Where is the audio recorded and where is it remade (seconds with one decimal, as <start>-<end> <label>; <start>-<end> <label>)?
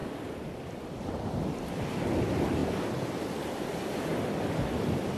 0.0-5.2 recorded